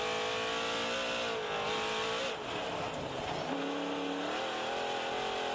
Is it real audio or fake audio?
real